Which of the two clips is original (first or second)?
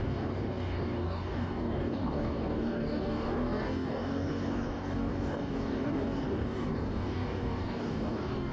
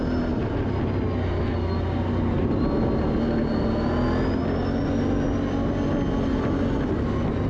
second